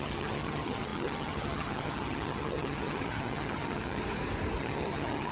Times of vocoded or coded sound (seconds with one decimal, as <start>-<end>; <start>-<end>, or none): 0.0-4.0; 4.6-5.3